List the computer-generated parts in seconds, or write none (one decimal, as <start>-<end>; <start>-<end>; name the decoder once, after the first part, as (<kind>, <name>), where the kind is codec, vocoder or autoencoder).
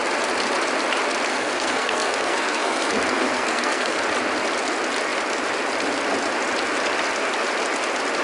1.3-4.0 (codec, SNAC)